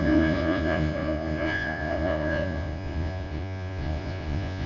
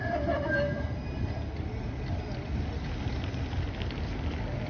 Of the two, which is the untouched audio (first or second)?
second